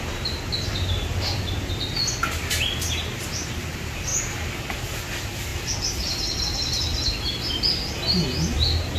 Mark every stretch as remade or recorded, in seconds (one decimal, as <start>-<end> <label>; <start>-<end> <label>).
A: 0.0-9.0 recorded